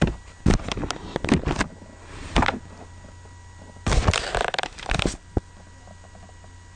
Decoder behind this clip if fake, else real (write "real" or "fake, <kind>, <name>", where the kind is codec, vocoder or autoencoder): real